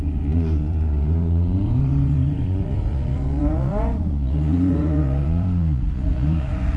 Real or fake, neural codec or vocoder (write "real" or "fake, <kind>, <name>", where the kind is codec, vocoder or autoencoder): fake, vocoder, Vocos